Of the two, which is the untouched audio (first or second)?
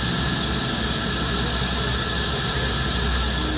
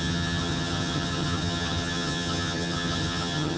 first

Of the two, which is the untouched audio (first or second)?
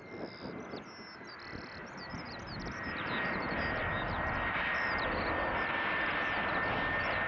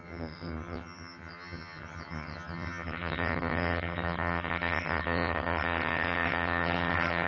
first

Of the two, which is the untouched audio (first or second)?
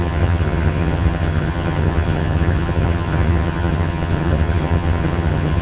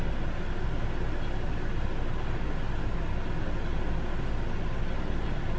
second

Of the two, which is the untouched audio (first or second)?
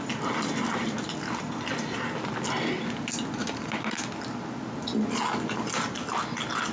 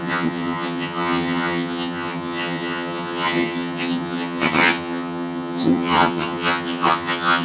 first